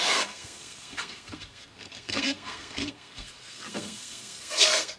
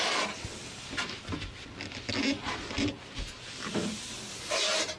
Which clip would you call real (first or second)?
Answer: second